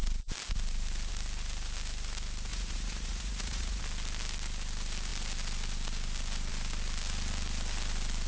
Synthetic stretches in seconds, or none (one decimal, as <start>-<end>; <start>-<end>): 2.5-3.8